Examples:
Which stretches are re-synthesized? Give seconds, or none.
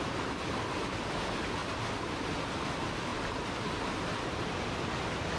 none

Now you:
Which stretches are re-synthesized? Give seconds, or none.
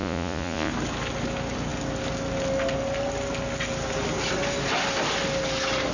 0.0-0.7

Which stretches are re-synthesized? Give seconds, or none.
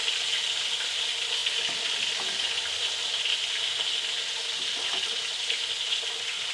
none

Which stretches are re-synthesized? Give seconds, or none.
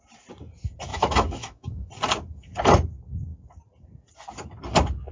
0.9-1.9